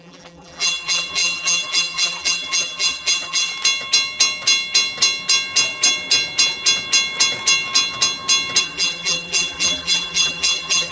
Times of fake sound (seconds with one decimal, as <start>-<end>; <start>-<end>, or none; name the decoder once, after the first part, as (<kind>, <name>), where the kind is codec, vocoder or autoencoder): 0.0-3.5 (vocoder, BigVGAN v2); 8.6-10.9